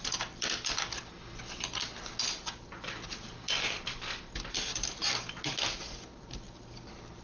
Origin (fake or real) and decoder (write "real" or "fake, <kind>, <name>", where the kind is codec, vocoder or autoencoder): real